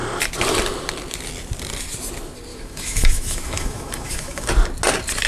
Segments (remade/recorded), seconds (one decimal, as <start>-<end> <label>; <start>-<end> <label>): 0.0-2.5 recorded; 2.5-4.5 remade; 4.5-5.3 recorded